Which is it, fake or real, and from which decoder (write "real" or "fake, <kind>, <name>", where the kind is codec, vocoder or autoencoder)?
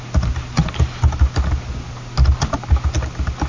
real